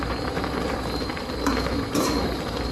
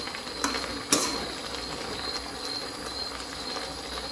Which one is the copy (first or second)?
first